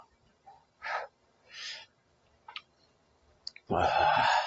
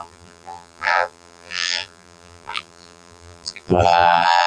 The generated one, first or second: second